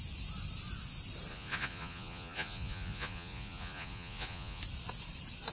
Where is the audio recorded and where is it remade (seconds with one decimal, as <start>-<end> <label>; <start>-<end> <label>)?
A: 0.0-1.3 recorded; 1.3-4.6 remade; 4.6-5.5 recorded